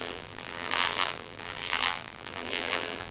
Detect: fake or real fake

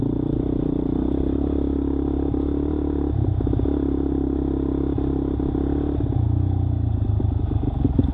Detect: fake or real real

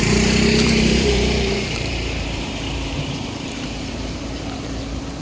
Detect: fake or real fake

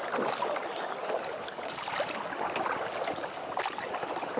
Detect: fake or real real